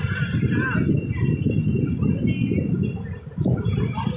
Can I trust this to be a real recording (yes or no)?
yes